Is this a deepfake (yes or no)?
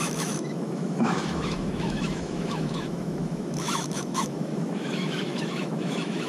yes